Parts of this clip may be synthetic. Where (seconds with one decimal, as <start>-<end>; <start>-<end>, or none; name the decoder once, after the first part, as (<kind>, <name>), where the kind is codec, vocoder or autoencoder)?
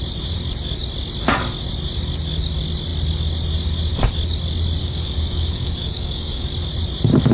4.8-6.5 (codec, DAC)